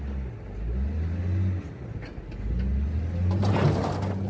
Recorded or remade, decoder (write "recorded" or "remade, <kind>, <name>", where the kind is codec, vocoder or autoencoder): recorded